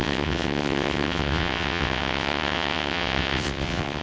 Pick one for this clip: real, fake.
fake